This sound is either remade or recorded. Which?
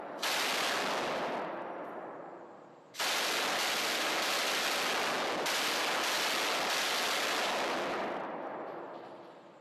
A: recorded